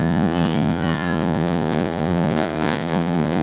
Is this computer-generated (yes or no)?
yes